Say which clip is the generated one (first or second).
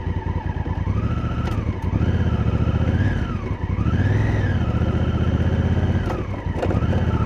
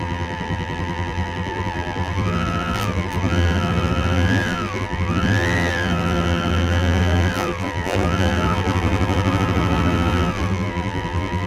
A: second